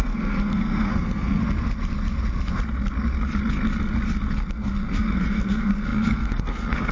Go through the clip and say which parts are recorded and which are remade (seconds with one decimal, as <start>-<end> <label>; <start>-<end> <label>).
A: 0.0-1.4 remade; 1.4-4.5 recorded; 4.5-6.9 remade